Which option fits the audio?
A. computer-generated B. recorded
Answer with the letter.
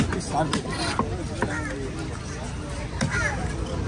B